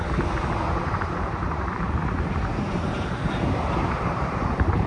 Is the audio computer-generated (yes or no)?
yes